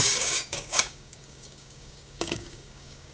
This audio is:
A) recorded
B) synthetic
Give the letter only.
B